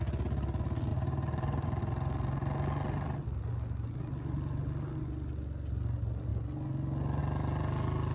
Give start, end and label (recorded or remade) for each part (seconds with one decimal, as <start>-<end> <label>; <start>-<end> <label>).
0.0-0.9 recorded; 0.9-1.8 remade; 1.8-8.1 recorded